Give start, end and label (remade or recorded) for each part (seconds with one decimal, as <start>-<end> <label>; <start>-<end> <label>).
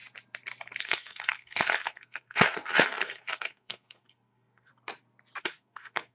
0.0-0.8 recorded; 0.8-4.7 remade; 4.7-5.4 recorded; 5.4-6.1 remade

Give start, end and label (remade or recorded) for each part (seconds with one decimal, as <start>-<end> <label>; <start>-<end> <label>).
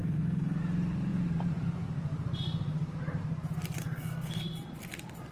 0.0-0.6 remade; 0.6-3.8 recorded; 3.8-4.4 remade; 4.4-5.3 recorded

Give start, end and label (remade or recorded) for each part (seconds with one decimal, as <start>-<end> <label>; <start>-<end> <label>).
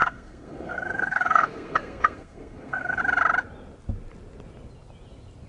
0.0-3.0 remade; 3.0-5.5 recorded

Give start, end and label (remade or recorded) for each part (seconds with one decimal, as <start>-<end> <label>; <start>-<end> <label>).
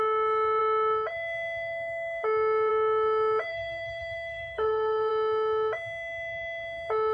0.0-3.5 recorded; 3.5-5.1 remade; 5.1-7.1 recorded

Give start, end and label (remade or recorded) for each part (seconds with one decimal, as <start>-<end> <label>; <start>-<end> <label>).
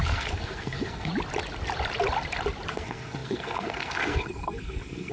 0.0-1.1 remade; 1.1-2.7 recorded; 2.7-5.1 remade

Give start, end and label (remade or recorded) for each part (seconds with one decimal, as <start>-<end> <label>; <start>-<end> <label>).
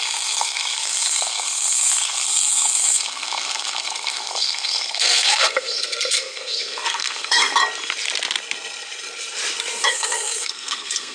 0.0-7.6 remade; 7.6-9.8 recorded; 9.8-11.1 remade